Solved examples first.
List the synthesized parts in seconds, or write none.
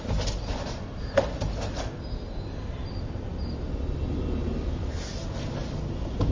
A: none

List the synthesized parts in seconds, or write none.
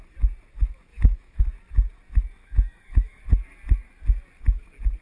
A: 0.9-1.4 (autoencoder, DAC-VAE); 2.4-3.2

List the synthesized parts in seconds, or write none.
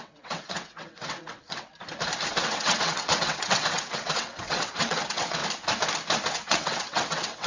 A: 0.0-1.7 (vocoder, WaveNeXt); 2.3-5.4; 6.3-7.5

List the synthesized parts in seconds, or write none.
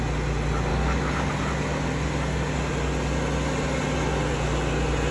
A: 0.7-1.3 (codec, DAC)